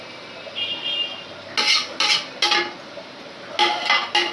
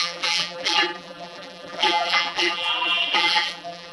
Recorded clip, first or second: first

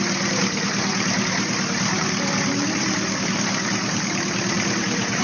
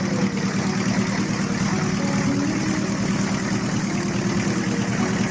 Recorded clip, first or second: second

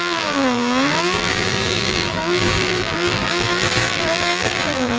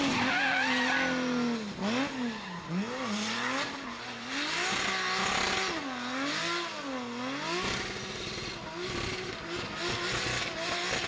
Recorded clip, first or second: second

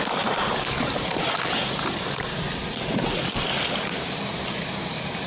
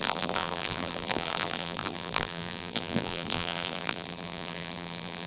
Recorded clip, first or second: first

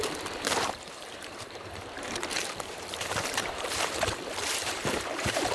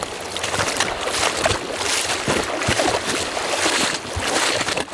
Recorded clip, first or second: second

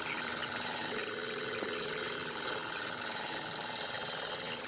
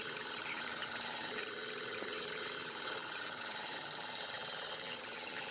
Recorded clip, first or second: first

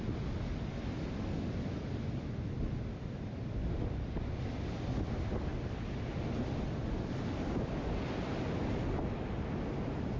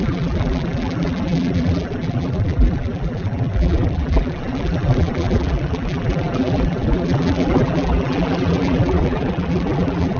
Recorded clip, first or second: first